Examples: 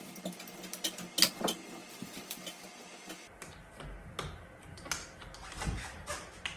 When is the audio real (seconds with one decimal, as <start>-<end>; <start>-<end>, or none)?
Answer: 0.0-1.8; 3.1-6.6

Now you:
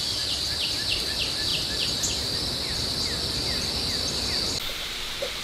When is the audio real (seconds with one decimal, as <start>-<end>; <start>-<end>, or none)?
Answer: 0.0-5.4

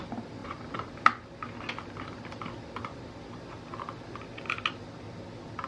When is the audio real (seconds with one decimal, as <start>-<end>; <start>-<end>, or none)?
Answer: 0.0-5.7

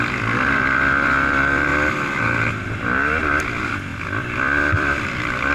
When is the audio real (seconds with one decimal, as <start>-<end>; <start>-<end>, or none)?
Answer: 1.7-2.7

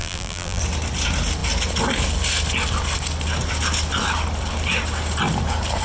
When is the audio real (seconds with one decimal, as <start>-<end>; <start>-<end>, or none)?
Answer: 0.6-5.8